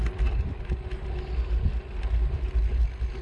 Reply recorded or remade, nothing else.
recorded